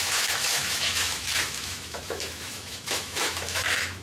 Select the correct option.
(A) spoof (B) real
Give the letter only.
A